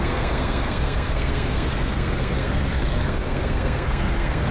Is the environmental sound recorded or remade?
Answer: remade